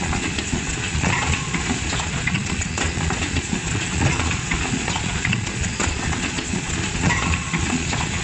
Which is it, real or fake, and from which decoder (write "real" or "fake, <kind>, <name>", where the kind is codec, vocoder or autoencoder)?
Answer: fake, vocoder, Vocos